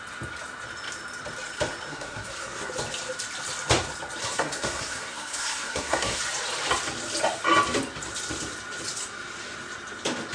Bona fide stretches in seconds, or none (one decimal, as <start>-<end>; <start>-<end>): 0.0-1.9; 2.7-4.2; 6.2-10.3